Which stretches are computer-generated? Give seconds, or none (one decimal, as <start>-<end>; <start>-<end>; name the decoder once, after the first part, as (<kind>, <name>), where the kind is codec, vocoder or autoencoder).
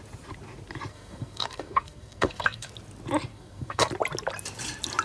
0.9-2.7 (codec, SNAC); 3.3-3.9